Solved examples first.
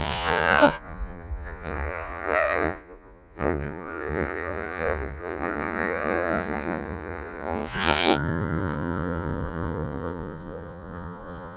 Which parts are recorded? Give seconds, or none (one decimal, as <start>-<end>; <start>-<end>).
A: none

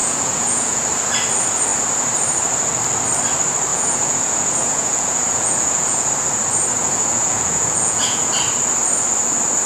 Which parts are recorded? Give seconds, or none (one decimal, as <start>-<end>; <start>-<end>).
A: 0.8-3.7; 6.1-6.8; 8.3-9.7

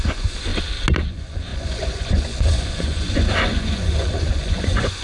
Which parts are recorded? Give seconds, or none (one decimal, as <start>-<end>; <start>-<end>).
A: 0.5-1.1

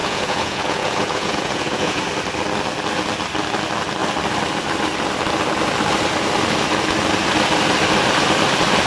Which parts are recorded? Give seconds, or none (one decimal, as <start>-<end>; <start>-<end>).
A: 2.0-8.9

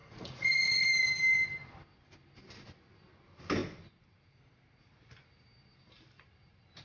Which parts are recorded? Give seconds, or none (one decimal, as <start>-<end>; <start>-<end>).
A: 0.9-6.8